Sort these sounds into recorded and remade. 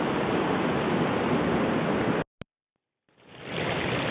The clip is recorded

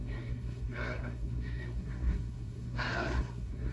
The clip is remade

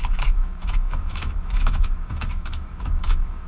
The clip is remade